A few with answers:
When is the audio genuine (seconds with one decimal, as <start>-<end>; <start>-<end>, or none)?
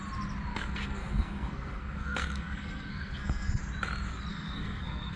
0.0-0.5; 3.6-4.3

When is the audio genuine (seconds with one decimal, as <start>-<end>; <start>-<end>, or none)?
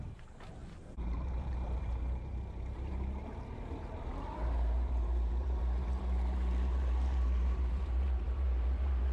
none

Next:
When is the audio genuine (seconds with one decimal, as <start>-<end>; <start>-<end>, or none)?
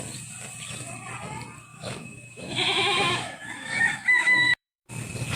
0.0-1.7; 4.9-5.4